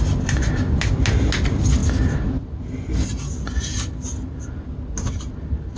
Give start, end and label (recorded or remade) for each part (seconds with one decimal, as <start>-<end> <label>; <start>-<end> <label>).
0.0-5.8 recorded